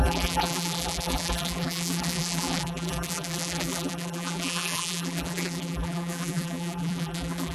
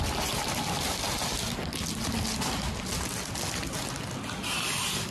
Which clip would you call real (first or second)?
second